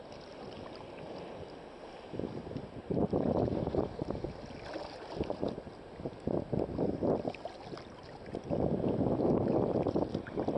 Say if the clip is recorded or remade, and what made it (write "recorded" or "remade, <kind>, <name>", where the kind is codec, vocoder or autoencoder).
recorded